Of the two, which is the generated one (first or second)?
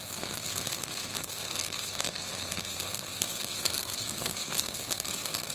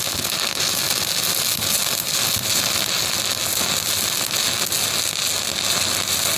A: first